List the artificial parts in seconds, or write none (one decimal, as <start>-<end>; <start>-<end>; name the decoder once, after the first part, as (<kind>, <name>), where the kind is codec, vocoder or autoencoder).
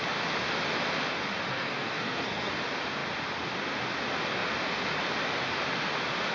1.5-2.5 (codec, SNAC)